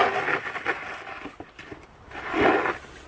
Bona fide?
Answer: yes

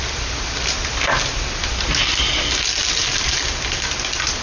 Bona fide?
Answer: yes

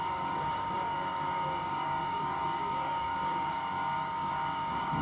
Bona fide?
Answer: no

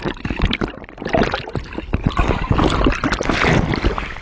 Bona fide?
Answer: yes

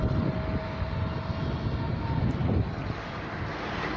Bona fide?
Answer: yes